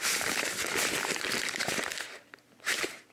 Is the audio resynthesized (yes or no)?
yes